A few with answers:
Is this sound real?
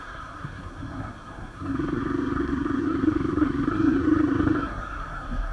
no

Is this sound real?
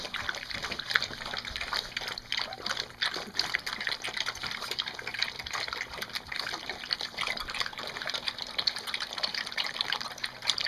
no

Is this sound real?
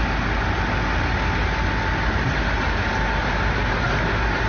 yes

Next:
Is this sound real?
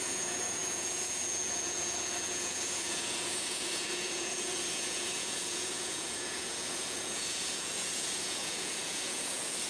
no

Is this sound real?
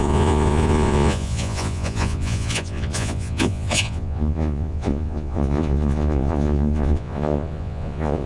no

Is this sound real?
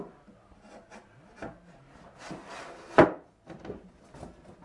yes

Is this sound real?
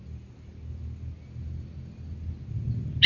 yes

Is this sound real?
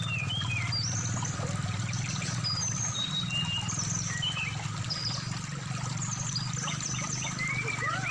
yes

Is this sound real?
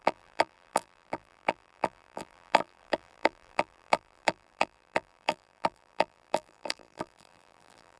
no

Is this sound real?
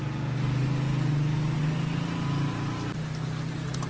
yes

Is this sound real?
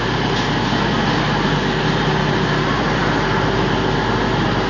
yes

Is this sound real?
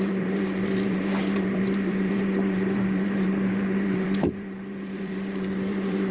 no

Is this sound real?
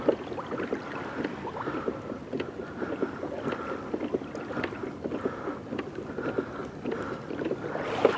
yes